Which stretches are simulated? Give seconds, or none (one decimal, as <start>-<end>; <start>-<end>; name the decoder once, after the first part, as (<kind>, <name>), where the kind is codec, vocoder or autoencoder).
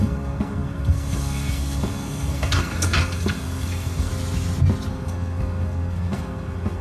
0.0-4.1 (codec, SNAC); 4.9-6.8